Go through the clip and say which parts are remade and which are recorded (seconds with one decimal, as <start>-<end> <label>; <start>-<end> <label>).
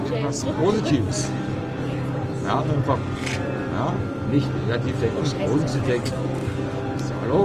0.0-5.7 recorded; 5.7-6.8 remade; 6.8-7.4 recorded